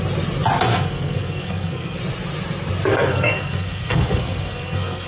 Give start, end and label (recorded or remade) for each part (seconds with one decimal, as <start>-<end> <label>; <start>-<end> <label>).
0.0-0.7 recorded; 0.7-2.0 remade; 2.0-2.9 recorded; 2.9-5.1 remade